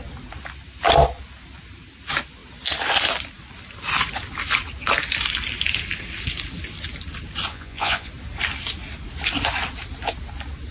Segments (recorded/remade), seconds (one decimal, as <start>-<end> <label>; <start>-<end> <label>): 0.0-7.5 recorded; 7.5-8.1 remade; 8.1-10.7 recorded